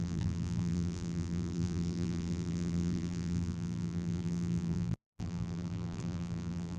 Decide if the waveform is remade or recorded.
remade